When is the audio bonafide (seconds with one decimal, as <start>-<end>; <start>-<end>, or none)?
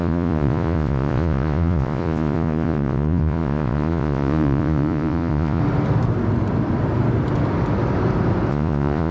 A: 5.6-8.5